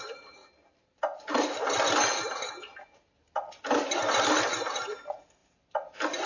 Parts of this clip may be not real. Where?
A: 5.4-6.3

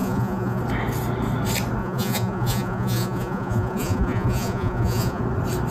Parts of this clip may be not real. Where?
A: 0.0-0.6; 1.8-5.2

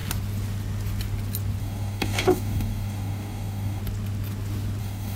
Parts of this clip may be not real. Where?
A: 1.6-3.8; 4.8-5.2

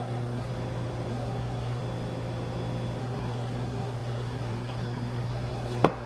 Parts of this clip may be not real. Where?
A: 0.0-0.5; 1.1-1.8; 3.0-6.1